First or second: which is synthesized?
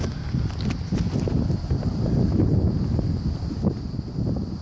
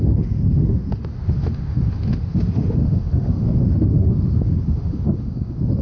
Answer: second